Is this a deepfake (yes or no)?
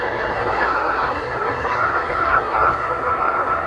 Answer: yes